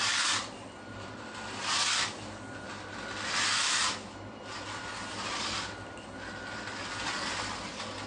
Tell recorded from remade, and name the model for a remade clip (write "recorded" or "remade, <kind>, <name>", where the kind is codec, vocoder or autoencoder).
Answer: recorded